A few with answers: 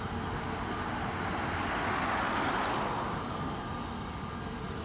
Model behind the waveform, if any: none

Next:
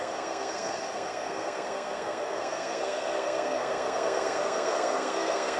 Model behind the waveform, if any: codec, SNAC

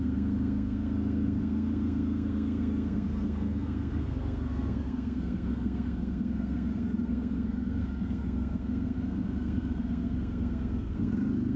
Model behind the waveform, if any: codec, SNAC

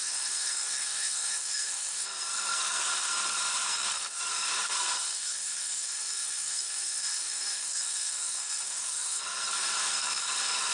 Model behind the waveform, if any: codec, SNAC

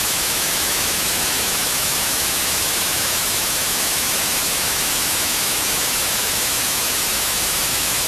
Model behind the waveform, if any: autoencoder, DAC-VAE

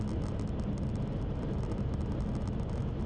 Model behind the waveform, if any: none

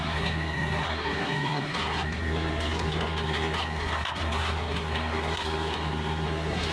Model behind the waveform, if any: codec, SNAC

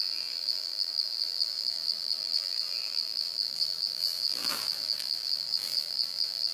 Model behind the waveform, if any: vocoder, BigVGAN v2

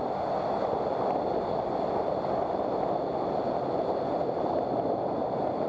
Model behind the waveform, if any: none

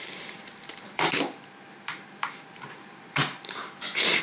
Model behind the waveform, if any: vocoder, BigVGAN v2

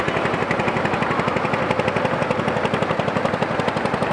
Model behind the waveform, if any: none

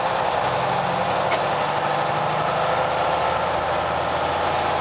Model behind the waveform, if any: none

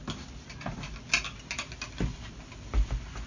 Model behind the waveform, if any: none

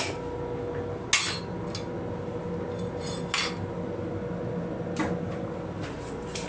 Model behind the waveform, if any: none